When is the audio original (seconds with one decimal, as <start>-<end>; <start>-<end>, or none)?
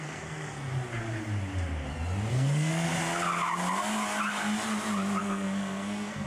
0.7-2.3; 2.9-5.2